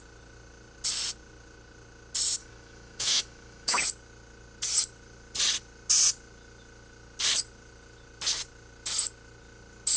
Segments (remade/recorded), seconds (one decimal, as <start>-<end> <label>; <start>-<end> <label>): 0.0-2.4 recorded; 2.4-3.8 remade; 3.8-10.0 recorded

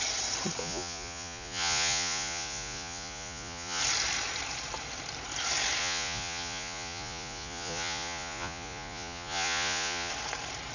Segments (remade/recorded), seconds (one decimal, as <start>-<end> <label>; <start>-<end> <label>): 0.0-0.6 recorded; 0.6-3.8 remade; 3.8-5.8 recorded; 5.8-10.1 remade; 10.1-10.7 recorded

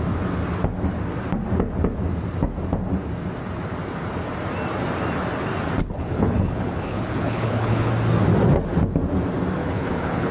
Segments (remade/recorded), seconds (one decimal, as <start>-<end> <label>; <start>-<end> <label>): 0.0-5.8 recorded; 5.8-7.9 remade; 7.9-9.6 recorded; 9.6-10.3 remade